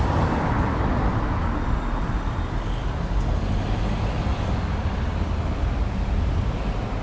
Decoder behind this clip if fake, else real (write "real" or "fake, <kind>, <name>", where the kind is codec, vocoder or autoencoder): real